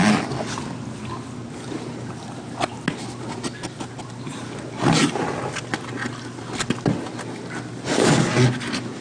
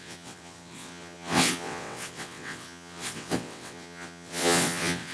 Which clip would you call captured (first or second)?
first